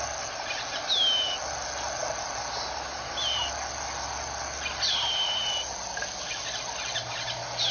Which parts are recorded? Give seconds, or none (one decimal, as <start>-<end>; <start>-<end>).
0.0-7.7